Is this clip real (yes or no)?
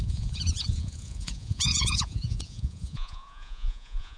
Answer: no